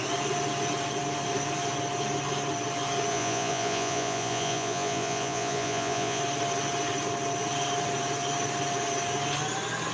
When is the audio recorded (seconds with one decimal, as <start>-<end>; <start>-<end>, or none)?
0.0-3.1; 6.2-9.9

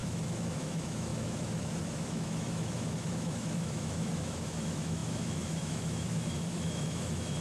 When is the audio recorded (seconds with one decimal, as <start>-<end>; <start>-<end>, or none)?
none

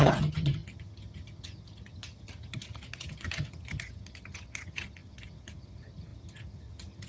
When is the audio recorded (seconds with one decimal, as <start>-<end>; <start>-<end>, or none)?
none

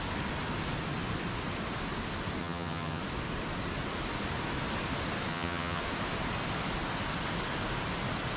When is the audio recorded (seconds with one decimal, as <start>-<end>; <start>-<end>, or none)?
0.0-2.4; 3.0-5.3; 5.8-8.4

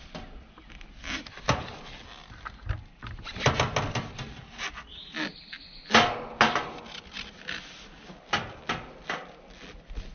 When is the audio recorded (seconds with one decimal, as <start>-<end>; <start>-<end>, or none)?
0.0-10.1

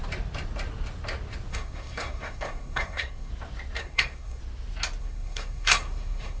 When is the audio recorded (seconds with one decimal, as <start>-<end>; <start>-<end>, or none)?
0.0-1.5; 3.3-3.8; 4.4-5.0

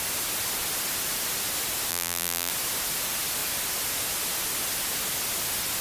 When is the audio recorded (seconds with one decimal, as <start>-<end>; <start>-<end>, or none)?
0.0-1.9; 2.5-5.8

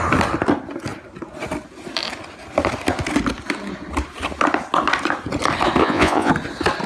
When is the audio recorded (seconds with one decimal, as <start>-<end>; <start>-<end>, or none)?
0.0-5.8; 6.3-6.9